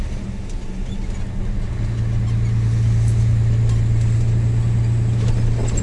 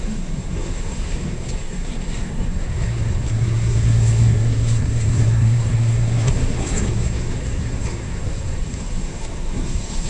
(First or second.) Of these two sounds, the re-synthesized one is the second